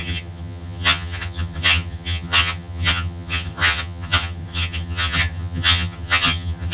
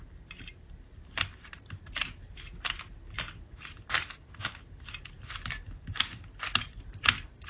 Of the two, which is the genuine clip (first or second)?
second